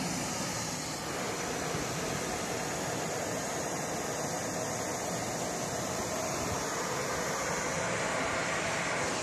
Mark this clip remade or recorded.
recorded